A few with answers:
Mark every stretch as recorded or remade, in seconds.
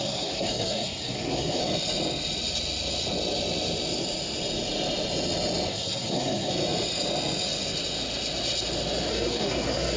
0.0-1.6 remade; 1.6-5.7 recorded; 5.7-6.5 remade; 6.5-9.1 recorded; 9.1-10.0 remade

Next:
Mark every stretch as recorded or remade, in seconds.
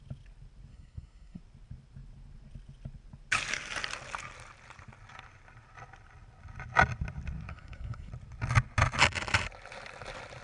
0.0-0.7 recorded; 0.7-1.4 remade; 1.4-7.5 recorded; 7.5-8.1 remade; 8.1-10.4 recorded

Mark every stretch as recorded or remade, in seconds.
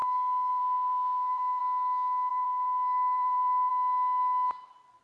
0.0-0.6 recorded; 0.6-1.6 remade; 1.6-2.3 recorded; 2.3-3.7 remade; 3.7-5.0 recorded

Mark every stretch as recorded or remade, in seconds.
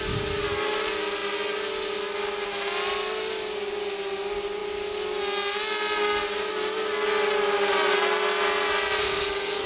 0.0-9.0 recorded; 9.0-9.7 remade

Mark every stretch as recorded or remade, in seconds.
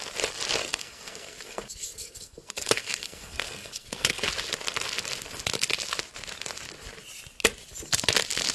0.0-0.6 recorded; 0.6-4.3 remade; 4.3-8.5 recorded